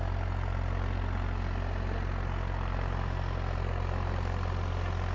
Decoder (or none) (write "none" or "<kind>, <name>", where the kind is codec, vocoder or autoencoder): none